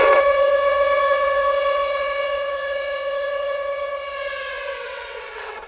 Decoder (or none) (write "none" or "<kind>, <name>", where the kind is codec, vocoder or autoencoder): vocoder, WaveNeXt